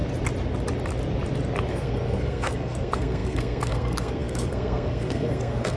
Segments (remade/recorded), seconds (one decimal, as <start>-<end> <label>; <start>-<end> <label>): 0.0-1.7 recorded; 1.7-5.8 remade